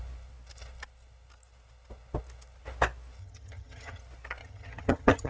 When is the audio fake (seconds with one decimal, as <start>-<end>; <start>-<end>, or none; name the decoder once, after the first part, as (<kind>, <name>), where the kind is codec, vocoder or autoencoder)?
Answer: 3.2-4.0 (vocoder, HiFi-GAN); 4.4-5.3